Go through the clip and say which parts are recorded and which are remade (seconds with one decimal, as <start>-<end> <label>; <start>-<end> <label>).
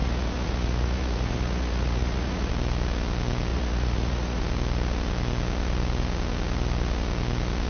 0.0-2.5 remade; 2.5-3.5 recorded; 3.5-4.4 remade; 4.4-7.7 recorded